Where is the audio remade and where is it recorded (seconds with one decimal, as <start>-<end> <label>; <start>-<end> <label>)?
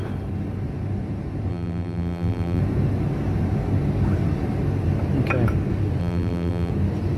0.0-1.5 recorded; 1.5-2.6 remade; 2.6-6.0 recorded; 6.0-6.7 remade; 6.7-7.2 recorded